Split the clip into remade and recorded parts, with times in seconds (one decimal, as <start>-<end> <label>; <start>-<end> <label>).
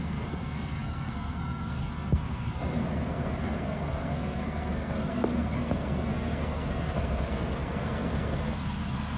0.0-9.2 remade